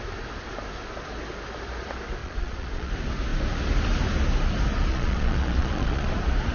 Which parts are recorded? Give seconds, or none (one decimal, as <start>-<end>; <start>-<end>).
0.0-2.2; 2.9-4.9; 6.1-6.5